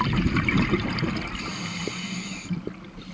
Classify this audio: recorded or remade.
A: recorded